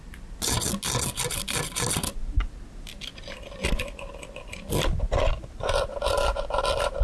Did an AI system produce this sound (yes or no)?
no